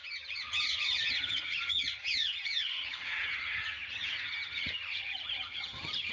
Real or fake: fake